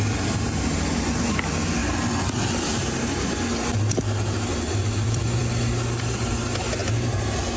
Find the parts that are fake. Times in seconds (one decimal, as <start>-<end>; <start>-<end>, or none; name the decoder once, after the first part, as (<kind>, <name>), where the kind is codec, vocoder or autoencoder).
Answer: 1.8-2.5 (vocoder, BigVGAN v2); 4.8-5.4